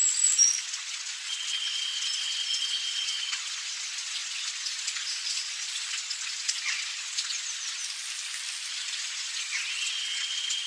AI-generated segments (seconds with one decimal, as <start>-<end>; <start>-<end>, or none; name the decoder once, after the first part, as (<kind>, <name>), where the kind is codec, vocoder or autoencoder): 0.6-7.8 (vocoder, Vocos); 8.7-10.7